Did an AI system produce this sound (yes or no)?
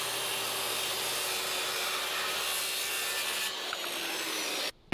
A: no